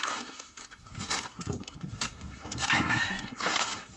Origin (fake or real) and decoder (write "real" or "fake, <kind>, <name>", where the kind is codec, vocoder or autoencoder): fake, codec, SNAC